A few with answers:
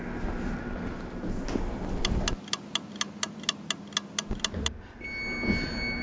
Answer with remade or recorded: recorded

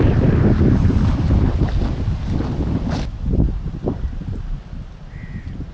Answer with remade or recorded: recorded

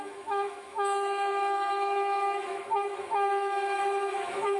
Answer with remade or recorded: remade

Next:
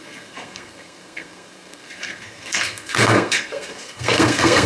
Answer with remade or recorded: remade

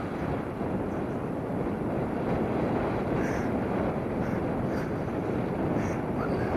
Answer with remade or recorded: recorded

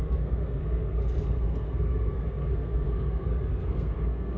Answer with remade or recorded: remade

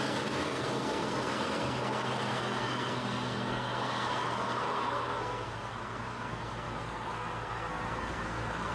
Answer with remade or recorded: remade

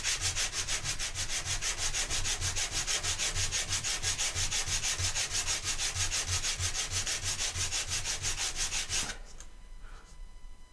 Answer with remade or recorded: recorded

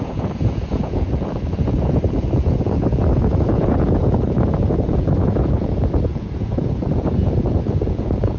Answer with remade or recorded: remade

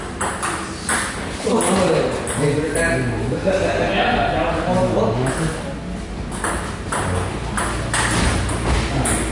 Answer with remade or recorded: recorded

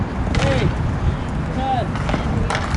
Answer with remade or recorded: recorded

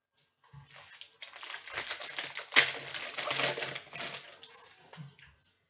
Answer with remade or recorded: recorded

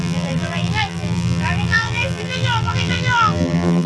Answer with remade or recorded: remade